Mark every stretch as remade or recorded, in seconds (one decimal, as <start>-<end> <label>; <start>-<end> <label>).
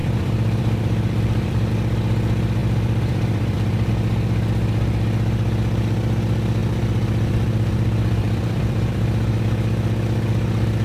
0.0-1.7 remade; 1.7-2.6 recorded; 2.6-3.9 remade; 3.9-6.6 recorded; 6.6-9.4 remade; 9.4-10.8 recorded